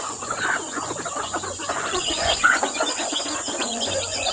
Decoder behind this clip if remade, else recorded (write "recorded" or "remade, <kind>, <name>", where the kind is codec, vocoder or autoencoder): remade, vocoder, Vocos